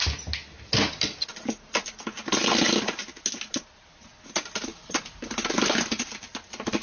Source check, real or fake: real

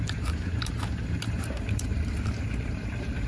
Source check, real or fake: fake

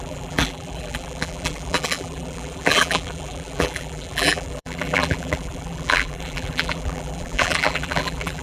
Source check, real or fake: fake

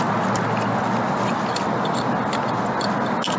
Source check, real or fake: real